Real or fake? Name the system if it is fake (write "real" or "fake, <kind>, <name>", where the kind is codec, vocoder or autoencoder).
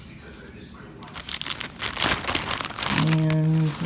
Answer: real